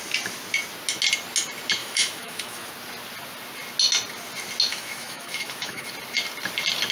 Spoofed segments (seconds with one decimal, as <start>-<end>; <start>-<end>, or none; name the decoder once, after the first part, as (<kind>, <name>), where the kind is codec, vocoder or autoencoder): 1.8-2.7 (autoencoder, DAC-VAE); 4.7-5.9